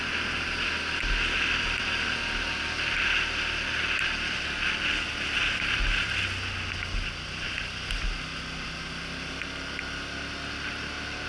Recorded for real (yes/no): yes